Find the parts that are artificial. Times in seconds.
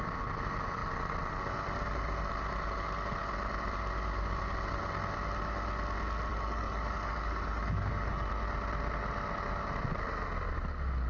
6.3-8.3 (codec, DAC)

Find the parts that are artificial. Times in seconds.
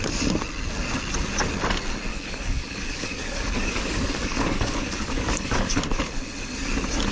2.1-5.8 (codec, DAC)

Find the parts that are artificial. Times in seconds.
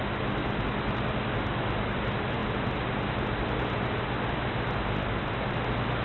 none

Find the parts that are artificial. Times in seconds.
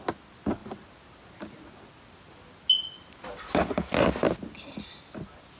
none